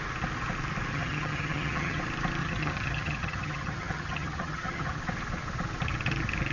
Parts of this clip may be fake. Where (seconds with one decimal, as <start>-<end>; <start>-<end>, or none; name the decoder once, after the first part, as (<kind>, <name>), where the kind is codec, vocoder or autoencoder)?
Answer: 0.9-2.0 (vocoder, HiFi-GAN); 2.4-5.0